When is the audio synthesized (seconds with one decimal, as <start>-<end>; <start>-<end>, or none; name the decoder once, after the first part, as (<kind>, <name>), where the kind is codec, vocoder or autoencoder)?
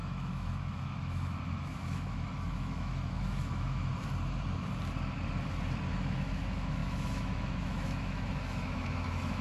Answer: 0.0-3.9 (autoencoder, DAC-VAE); 5.9-9.4